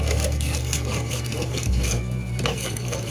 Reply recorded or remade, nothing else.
remade